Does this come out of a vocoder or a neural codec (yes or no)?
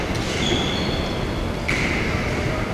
no